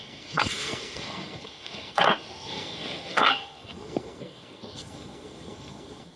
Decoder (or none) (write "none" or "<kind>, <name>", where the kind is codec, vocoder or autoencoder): codec, SNAC